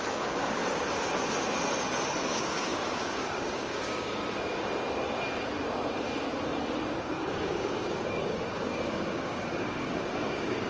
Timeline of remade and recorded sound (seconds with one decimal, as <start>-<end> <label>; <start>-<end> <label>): 0.0-0.6 remade; 0.6-2.3 recorded; 2.3-4.2 remade; 4.2-7.0 recorded; 7.0-10.7 remade